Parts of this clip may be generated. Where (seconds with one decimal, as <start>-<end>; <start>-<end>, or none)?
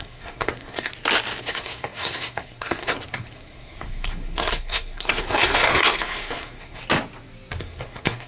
0.0-0.9; 1.4-6.8; 7.6-8.3